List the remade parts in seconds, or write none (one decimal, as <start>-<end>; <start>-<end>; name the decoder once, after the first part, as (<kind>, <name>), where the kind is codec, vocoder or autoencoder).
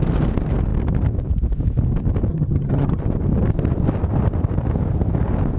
2.3-3.0 (vocoder, HiFi-GAN)